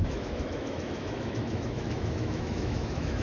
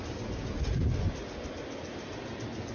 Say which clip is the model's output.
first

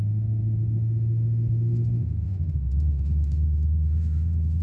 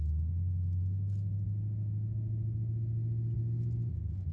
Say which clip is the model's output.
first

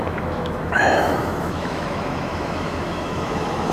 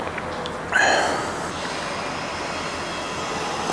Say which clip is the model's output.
first